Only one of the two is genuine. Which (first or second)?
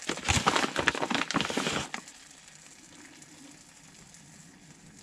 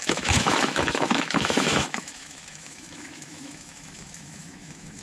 first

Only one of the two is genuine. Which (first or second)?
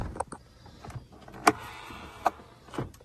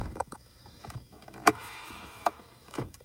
first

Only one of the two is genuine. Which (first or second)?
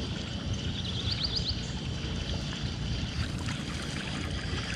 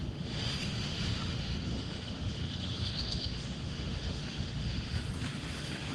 first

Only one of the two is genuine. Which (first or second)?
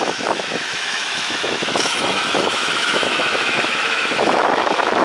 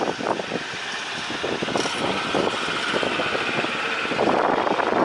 second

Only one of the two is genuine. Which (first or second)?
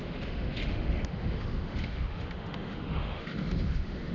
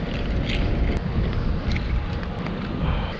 second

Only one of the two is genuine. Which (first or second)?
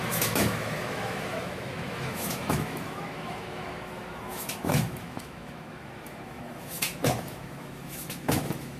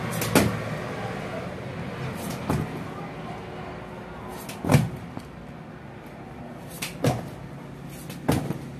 second